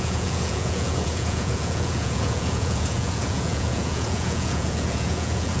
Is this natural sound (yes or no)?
no